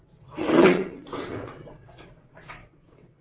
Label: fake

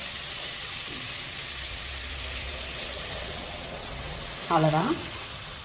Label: fake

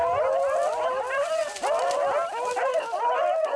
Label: real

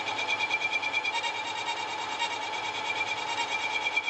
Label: real